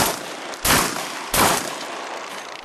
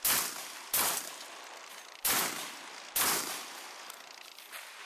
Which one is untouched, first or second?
second